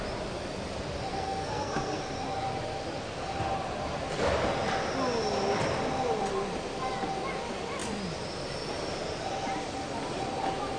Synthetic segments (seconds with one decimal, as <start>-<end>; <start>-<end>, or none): 1.1-2.0